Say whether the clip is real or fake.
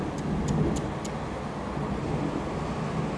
real